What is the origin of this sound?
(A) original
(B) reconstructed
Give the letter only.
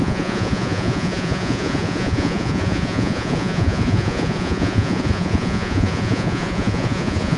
B